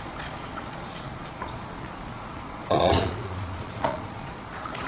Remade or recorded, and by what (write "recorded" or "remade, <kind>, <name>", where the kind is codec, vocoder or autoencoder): remade, vocoder, Vocos